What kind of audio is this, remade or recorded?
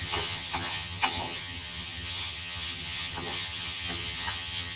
remade